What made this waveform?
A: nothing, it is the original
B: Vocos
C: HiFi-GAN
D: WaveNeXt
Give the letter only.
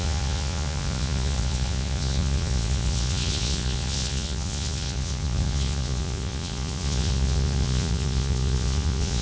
B